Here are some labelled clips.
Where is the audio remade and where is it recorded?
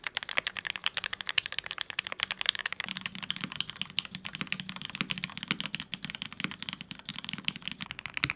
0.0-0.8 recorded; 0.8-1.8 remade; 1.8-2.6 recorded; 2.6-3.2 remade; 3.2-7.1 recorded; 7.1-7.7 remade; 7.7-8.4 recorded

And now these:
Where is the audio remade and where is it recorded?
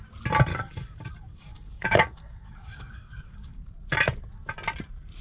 0.0-0.5 recorded; 0.5-3.6 remade; 3.6-5.2 recorded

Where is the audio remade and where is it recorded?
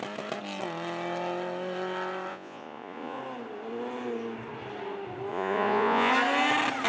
0.0-2.3 recorded; 2.3-3.2 remade; 3.2-5.3 recorded; 5.3-6.1 remade; 6.1-6.9 recorded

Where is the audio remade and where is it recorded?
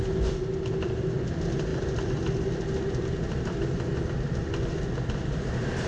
0.0-5.9 recorded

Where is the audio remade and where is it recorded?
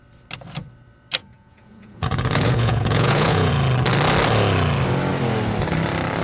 0.0-1.2 recorded; 1.2-3.5 remade; 3.5-6.2 recorded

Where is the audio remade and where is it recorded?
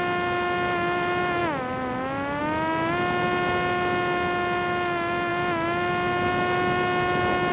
0.0-7.5 recorded